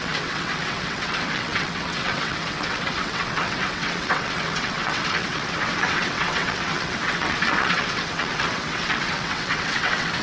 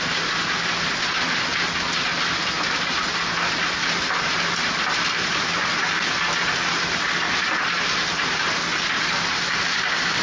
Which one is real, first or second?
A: second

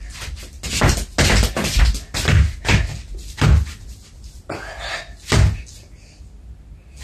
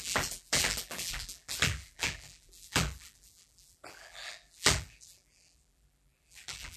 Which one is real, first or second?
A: first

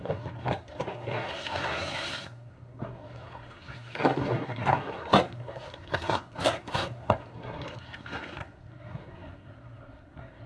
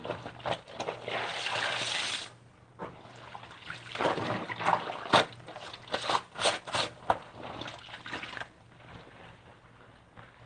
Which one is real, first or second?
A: second